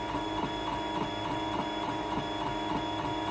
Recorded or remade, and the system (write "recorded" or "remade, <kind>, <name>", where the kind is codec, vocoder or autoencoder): recorded